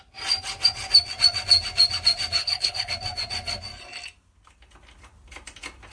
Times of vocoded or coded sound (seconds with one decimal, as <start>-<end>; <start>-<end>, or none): 2.4-2.9